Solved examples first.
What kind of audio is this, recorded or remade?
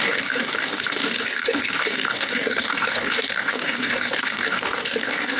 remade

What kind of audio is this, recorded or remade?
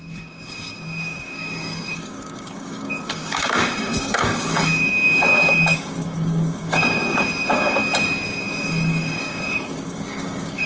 remade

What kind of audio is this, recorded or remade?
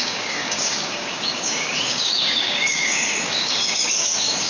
remade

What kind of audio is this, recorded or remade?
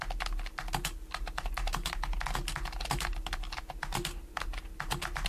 recorded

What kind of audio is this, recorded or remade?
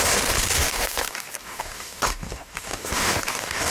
remade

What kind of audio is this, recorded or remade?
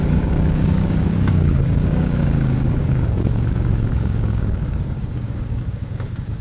remade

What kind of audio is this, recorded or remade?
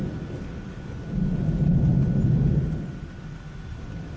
recorded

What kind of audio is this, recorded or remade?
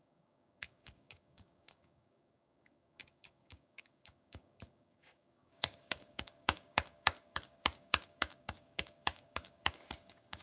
remade